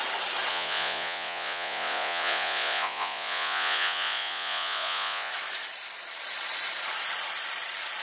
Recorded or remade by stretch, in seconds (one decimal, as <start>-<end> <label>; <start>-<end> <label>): 0.0-0.5 recorded; 0.5-5.3 remade; 5.3-8.0 recorded